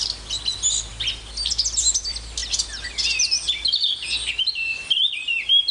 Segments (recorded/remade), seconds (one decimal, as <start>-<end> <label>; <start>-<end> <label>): 0.0-5.7 recorded